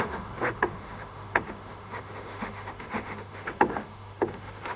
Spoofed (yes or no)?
yes